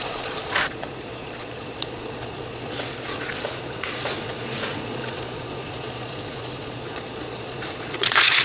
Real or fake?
fake